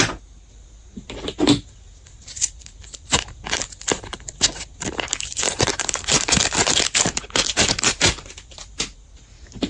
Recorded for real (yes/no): no